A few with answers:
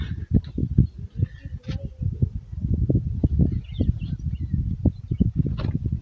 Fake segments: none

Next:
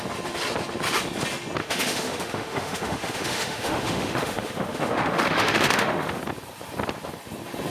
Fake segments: 1.6-6.2 (autoencoder, DAC-VAE)

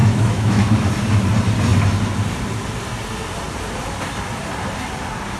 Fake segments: 0.0-0.9 (autoencoder, DAC-VAE)

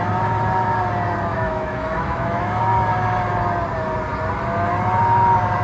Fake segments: 1.3-2.6 (autoencoder, DAC-VAE)

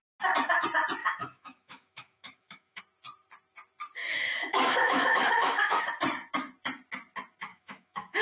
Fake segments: 1.0-2.8 (autoencoder, DAC-VAE); 4.0-5.8; 7.5-8.2